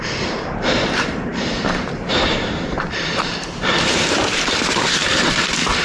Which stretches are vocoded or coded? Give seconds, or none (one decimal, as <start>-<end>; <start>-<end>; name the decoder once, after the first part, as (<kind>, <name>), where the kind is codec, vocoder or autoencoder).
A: 0.0-5.8 (vocoder, BigVGAN v2)